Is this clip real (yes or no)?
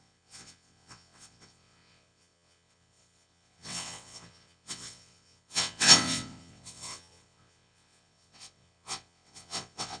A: no